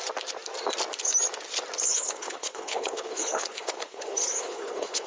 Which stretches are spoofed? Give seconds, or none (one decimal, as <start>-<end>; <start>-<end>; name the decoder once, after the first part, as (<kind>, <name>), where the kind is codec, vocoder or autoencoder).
1.9-5.1 (codec, HILCodec)